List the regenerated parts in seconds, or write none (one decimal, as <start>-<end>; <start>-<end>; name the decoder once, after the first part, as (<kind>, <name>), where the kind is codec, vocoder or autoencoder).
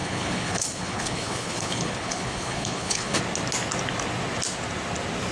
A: 0.0-3.2 (codec, HILCodec)